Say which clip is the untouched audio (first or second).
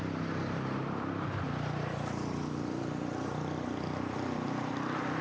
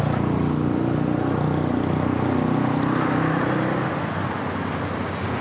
second